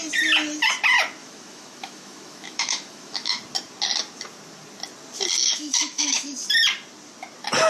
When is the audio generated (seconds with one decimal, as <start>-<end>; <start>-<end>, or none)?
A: 1.2-3.4; 5.4-6.3